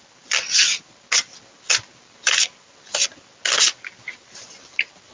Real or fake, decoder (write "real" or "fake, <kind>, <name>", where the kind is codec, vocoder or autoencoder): real